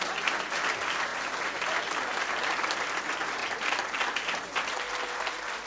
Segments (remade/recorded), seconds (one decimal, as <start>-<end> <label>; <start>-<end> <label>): 0.0-5.7 recorded